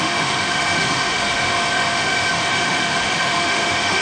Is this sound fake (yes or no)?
yes